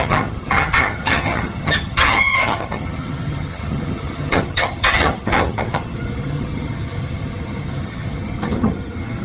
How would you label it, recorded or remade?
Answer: remade